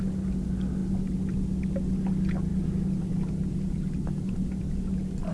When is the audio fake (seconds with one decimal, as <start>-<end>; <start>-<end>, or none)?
none